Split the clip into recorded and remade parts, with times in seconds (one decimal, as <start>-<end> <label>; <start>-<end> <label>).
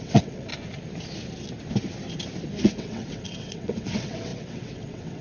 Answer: 0.0-0.5 remade; 0.5-2.6 recorded; 2.6-5.2 remade